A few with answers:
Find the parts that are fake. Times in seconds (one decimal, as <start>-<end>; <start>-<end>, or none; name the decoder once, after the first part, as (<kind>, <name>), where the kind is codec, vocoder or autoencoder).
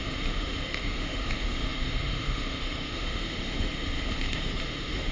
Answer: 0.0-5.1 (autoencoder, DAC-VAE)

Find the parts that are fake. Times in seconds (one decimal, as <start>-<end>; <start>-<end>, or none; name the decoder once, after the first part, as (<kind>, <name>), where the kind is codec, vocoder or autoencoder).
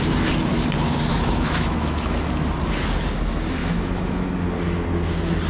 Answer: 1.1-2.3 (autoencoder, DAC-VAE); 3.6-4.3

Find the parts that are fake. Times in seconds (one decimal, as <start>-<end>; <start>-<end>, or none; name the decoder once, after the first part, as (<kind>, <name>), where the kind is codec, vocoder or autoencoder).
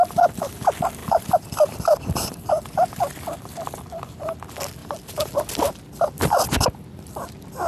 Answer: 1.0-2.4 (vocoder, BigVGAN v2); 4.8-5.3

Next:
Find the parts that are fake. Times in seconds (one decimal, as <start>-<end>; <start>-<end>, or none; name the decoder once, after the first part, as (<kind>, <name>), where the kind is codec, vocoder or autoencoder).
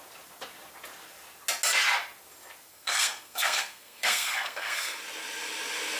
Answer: 2.7-5.0 (codec, SNAC)